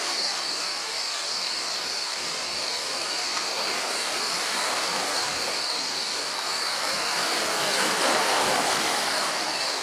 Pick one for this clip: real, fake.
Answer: fake